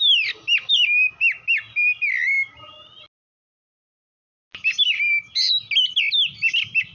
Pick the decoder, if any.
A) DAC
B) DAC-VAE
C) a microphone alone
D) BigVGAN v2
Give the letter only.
C